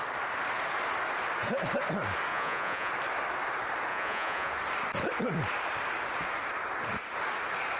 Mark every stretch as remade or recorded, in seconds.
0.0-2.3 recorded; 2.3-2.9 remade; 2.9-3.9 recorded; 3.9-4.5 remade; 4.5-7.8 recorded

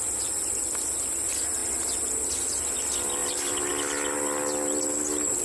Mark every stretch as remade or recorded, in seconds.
0.0-3.2 recorded; 3.2-3.7 remade; 3.7-5.4 recorded

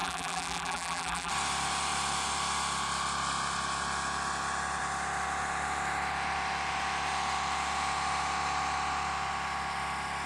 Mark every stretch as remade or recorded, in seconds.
0.0-1.3 remade; 1.3-10.3 recorded